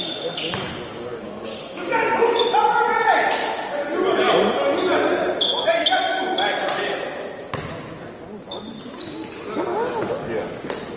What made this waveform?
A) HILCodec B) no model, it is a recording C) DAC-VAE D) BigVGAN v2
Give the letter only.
B